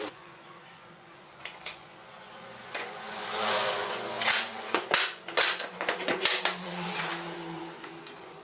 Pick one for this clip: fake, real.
fake